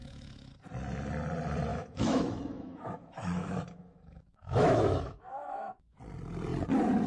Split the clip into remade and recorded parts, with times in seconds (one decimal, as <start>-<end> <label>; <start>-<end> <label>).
0.0-0.5 remade; 0.5-1.7 recorded; 1.7-6.0 remade; 6.0-7.1 recorded